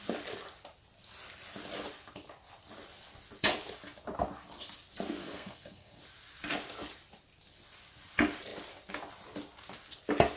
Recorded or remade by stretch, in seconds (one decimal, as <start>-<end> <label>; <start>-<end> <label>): 0.0-5.2 recorded; 5.2-6.0 remade; 6.0-10.4 recorded